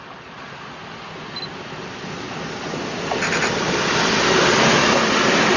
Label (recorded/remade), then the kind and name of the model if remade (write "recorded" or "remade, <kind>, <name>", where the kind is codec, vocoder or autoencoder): recorded